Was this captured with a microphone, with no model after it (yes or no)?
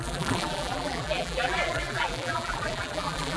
no